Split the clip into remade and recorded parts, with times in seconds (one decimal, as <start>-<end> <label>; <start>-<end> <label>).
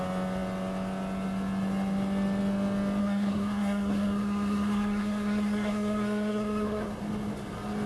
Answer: 0.0-3.0 recorded; 3.0-7.0 remade; 7.0-7.9 recorded